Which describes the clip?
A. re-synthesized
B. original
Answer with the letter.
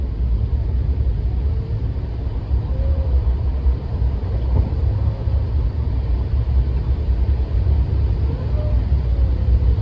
A